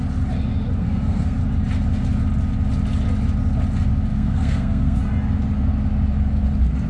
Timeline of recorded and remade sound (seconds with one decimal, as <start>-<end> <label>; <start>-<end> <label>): 0.0-0.8 recorded; 0.8-1.4 remade; 1.4-4.1 recorded; 4.1-5.0 remade; 5.0-6.9 recorded